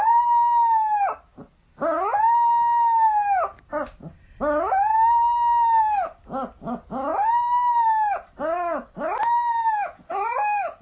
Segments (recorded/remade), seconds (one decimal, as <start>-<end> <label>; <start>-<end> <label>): 0.0-4.9 recorded; 4.9-5.8 remade; 5.8-10.8 recorded